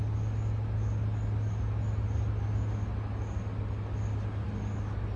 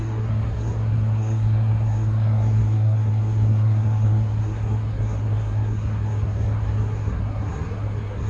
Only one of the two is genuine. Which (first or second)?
first